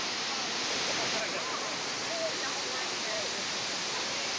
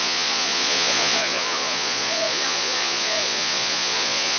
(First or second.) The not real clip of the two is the second